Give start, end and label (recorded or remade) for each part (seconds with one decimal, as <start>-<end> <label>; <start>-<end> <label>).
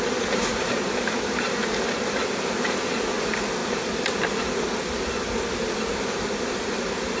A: 0.0-3.6 remade; 3.6-6.1 recorded; 6.1-7.2 remade